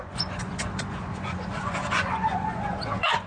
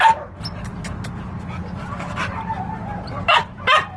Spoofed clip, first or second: first